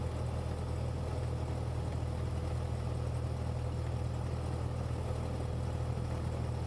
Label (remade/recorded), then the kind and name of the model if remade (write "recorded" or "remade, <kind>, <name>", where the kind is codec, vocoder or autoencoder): recorded